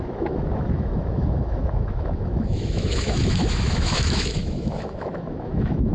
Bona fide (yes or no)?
no